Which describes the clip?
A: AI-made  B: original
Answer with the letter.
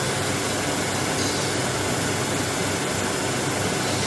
B